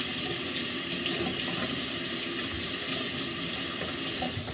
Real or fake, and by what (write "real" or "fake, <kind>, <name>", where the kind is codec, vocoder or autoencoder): real